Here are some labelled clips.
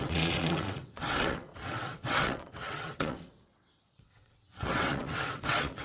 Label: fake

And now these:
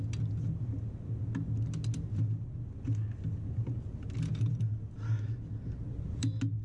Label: real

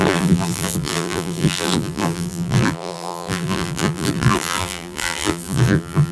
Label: fake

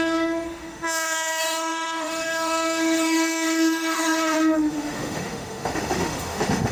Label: fake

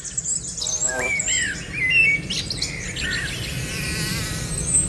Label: real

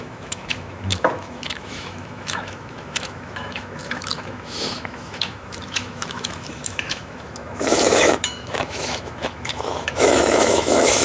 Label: fake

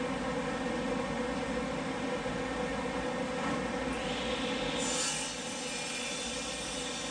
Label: real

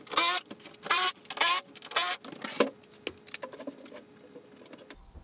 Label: real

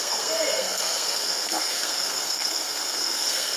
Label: fake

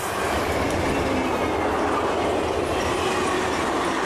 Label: real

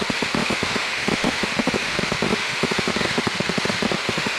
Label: fake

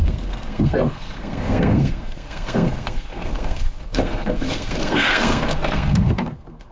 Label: fake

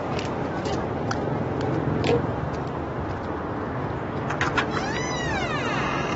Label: real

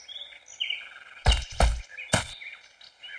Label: real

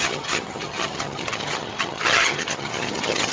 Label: fake